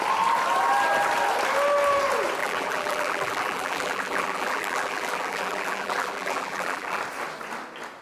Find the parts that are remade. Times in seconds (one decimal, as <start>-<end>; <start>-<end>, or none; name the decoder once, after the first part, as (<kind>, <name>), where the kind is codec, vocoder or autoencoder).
2.4-7.0 (vocoder, BigVGAN v2)